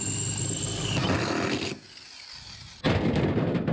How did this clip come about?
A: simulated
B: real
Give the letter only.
B